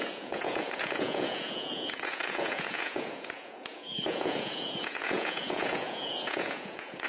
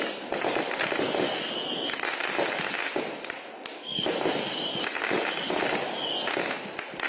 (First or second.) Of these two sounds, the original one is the second